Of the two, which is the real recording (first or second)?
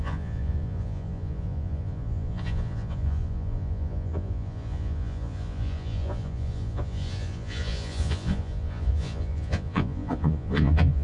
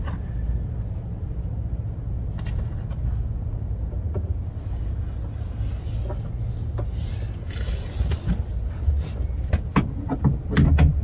second